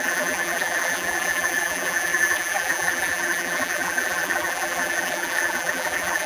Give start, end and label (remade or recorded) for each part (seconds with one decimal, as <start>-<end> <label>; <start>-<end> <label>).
0.0-6.3 remade